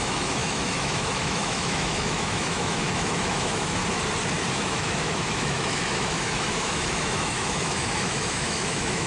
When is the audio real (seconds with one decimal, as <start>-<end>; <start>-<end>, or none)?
3.8-4.5